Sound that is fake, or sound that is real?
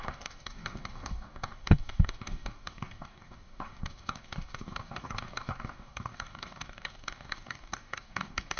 fake